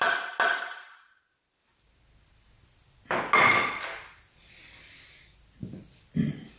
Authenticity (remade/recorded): recorded